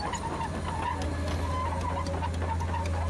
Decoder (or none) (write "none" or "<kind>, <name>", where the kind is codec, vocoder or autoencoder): none